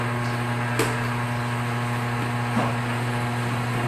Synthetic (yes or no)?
no